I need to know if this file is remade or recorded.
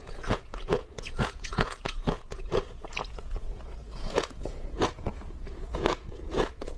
remade